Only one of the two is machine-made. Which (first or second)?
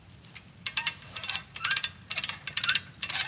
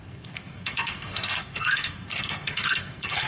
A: second